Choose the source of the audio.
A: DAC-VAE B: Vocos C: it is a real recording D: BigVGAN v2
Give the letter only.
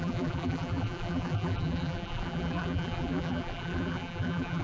D